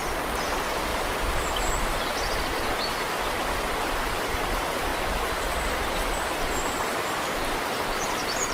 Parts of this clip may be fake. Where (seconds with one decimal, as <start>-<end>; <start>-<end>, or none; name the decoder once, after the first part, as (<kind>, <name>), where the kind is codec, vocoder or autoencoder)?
none